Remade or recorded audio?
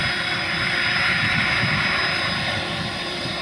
recorded